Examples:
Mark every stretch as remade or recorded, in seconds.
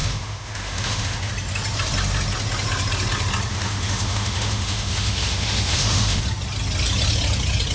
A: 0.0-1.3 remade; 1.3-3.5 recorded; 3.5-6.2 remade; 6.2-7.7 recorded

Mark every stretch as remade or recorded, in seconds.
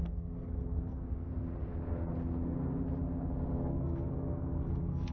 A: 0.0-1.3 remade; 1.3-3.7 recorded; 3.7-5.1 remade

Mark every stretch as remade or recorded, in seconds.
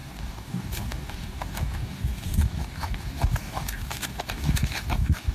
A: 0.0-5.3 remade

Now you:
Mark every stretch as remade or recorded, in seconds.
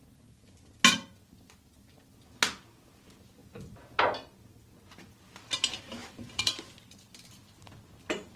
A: 0.0-6.0 recorded; 6.0-7.0 remade; 7.0-8.4 recorded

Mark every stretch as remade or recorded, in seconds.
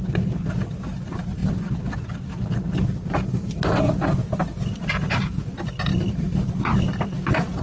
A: 0.0-7.6 recorded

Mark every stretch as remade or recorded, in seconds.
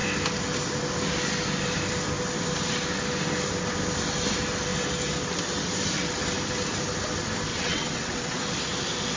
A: 0.0-7.5 recorded; 7.5-8.4 remade; 8.4-9.2 recorded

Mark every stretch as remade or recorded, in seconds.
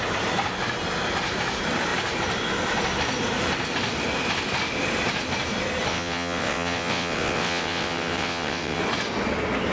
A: 0.0-5.9 recorded; 5.9-8.8 remade; 8.8-9.7 recorded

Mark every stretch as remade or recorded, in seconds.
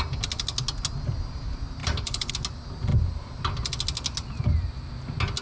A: 0.0-1.8 recorded; 1.8-2.3 remade; 2.3-2.9 recorded; 2.9-3.4 remade; 3.4-5.4 recorded